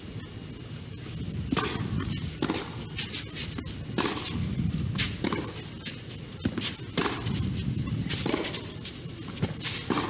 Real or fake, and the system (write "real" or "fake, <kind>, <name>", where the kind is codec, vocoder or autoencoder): real